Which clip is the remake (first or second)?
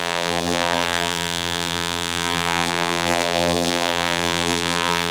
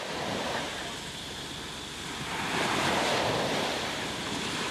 first